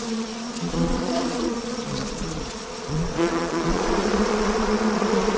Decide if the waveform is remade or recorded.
remade